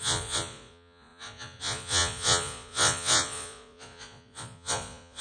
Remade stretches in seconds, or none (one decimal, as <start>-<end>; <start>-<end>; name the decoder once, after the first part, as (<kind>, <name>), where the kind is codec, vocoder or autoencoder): 0.0-5.2 (vocoder, Vocos)